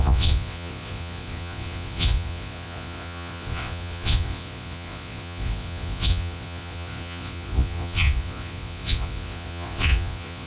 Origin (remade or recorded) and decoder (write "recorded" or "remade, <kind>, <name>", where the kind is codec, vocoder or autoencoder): remade, vocoder, Vocos